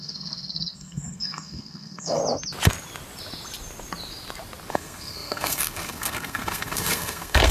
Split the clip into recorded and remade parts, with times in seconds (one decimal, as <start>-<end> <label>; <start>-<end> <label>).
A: 0.0-2.2 remade; 2.2-4.7 recorded; 4.7-7.5 remade